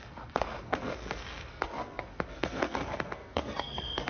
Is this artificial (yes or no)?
yes